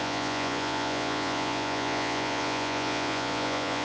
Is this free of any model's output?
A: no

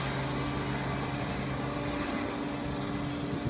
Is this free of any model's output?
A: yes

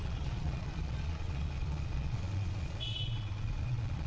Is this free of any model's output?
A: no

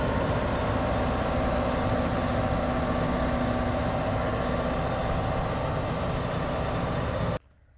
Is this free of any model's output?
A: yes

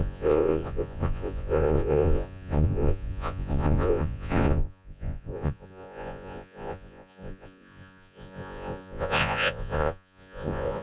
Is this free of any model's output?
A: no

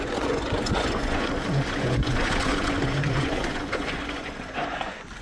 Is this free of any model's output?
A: no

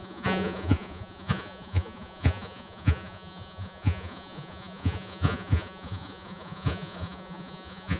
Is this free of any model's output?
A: no